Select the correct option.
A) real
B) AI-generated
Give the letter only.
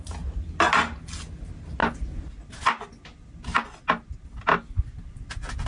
A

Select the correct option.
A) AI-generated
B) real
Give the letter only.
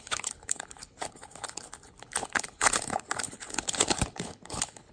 A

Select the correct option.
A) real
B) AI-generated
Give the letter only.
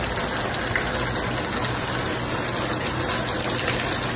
A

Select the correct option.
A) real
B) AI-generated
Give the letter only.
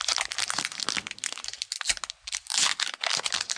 A